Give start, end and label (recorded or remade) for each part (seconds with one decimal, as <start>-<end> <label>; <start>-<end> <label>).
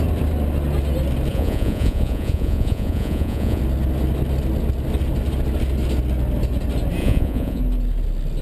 0.0-1.3 recorded; 1.3-3.6 remade; 3.6-7.0 recorded; 7.0-7.6 remade; 7.6-8.4 recorded